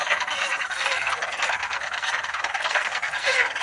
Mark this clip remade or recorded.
remade